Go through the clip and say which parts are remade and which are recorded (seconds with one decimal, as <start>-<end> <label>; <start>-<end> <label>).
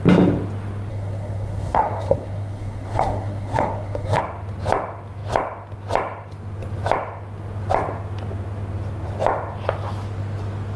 0.0-0.9 recorded; 0.9-4.2 remade; 4.2-10.8 recorded